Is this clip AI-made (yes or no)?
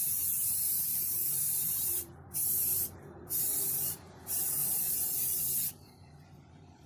yes